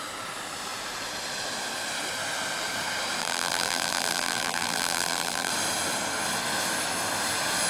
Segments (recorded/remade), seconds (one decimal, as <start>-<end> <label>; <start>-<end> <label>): 0.0-3.2 recorded; 3.2-5.5 remade; 5.5-7.7 recorded